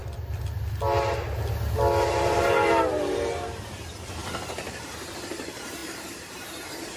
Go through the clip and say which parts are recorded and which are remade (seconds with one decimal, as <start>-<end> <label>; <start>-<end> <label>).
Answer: 0.0-2.1 recorded; 2.1-4.2 remade; 4.2-4.7 recorded; 4.7-7.0 remade